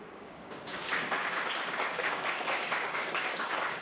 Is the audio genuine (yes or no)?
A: no